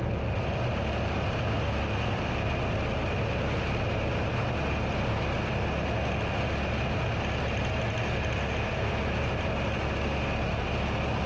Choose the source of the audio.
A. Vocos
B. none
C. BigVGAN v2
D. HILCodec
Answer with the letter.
B